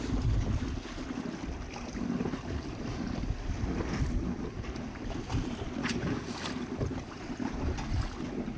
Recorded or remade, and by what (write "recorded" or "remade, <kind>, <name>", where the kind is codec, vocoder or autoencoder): recorded